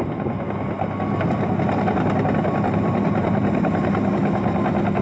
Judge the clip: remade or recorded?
recorded